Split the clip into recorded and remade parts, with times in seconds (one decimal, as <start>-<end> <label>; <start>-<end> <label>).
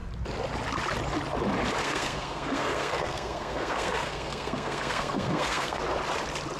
0.0-1.8 recorded; 1.8-5.8 remade; 5.8-6.6 recorded